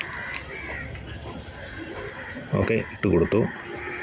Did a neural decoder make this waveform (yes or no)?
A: no